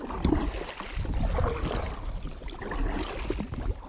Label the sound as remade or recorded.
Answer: recorded